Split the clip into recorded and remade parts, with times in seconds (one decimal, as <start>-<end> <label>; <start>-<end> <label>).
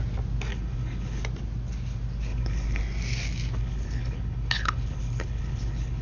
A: 0.0-0.5 recorded; 0.5-1.2 remade; 1.2-2.3 recorded; 2.3-2.8 remade; 2.8-3.6 recorded; 3.6-6.0 remade